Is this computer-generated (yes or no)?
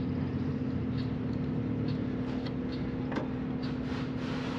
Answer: no